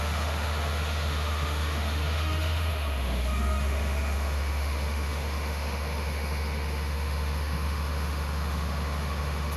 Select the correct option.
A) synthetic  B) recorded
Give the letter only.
A